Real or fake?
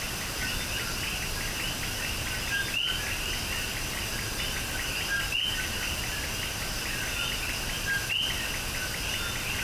real